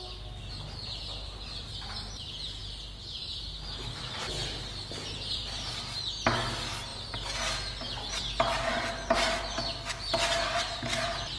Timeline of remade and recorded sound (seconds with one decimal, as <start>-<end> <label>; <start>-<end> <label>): 0.0-11.4 recorded